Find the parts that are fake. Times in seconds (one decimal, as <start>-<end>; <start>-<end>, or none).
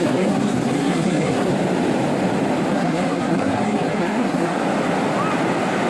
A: 0.0-1.5; 2.7-4.6